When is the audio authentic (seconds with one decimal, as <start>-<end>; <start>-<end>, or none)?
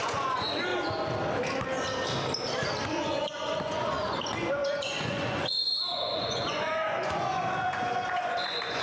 0.7-2.8